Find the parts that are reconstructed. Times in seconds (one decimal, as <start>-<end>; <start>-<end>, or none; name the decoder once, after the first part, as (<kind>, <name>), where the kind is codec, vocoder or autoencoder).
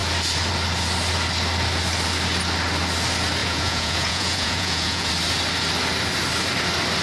3.4-5.1 (vocoder, Vocos)